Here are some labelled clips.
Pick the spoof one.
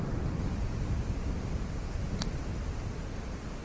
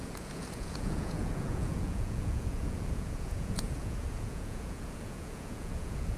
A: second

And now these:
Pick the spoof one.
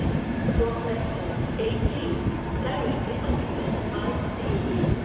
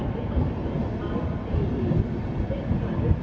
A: first